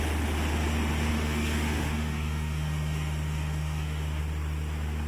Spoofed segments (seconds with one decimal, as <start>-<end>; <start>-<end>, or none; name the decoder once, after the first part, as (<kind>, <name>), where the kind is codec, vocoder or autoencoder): 1.1-4.2 (autoencoder, DAC-VAE)